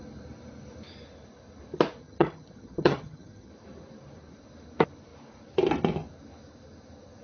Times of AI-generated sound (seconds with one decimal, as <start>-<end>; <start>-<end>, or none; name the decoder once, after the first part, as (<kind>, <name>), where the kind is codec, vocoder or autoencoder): 2.0-3.5 (vocoder, HiFi-GAN)